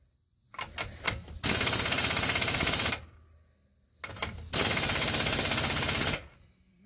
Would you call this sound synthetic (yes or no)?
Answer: no